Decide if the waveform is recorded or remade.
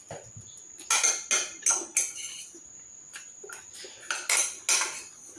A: recorded